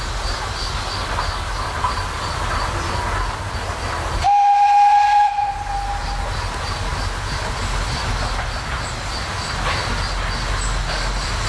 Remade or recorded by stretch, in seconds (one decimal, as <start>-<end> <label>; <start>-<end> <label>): 0.0-11.5 recorded